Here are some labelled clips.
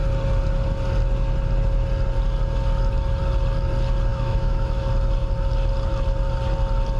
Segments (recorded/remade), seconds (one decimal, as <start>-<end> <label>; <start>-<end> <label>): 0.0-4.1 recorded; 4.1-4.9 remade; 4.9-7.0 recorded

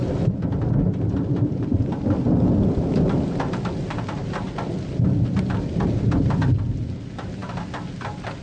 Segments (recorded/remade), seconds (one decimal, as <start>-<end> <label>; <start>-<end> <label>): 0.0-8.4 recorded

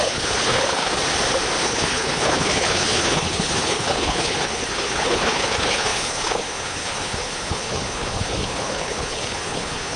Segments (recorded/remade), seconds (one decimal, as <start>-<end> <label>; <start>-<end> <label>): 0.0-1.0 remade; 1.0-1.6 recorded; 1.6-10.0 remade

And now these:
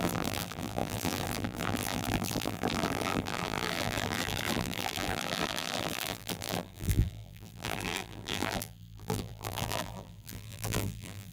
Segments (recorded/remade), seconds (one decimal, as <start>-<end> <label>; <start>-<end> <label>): 0.0-11.3 remade

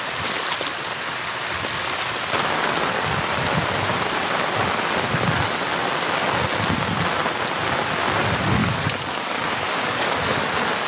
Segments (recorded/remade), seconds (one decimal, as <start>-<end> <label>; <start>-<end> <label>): 0.0-8.6 recorded; 8.6-10.4 remade; 10.4-10.9 recorded